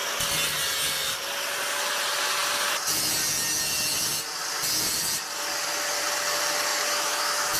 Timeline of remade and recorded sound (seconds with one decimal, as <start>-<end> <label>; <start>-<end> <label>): 0.0-6.7 recorded; 6.7-7.6 remade